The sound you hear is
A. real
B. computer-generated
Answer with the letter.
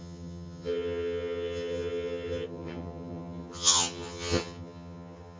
B